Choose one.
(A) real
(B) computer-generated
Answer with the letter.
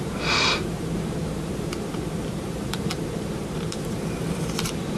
B